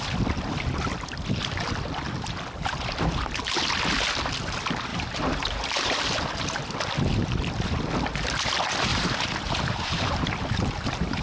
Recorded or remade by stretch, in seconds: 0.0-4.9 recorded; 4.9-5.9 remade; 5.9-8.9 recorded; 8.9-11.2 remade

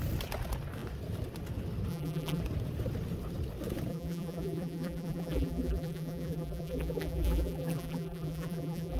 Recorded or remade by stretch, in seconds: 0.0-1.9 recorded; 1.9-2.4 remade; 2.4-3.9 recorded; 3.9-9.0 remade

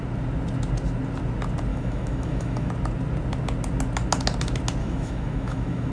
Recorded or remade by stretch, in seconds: 0.0-1.7 recorded; 1.7-2.7 remade; 2.7-4.8 recorded; 4.8-5.9 remade

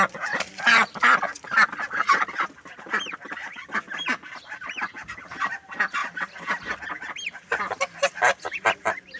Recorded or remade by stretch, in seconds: 0.0-9.2 recorded

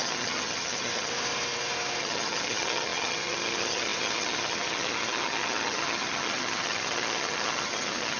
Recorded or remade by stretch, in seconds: 0.0-1.1 remade; 1.1-2.0 recorded; 2.0-8.2 remade

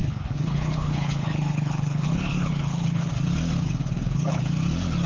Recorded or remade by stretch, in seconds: 0.0-3.1 remade; 3.1-3.8 recorded; 3.8-4.4 remade; 4.4-5.1 recorded

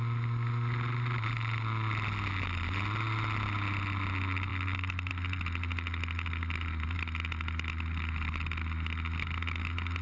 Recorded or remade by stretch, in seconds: 0.0-10.0 recorded

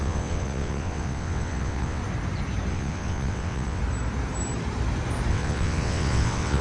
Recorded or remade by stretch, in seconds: 0.0-2.0 remade; 2.0-2.7 recorded; 2.7-3.8 remade; 3.8-5.3 recorded; 5.3-6.6 remade